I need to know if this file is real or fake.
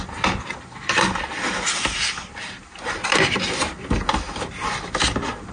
real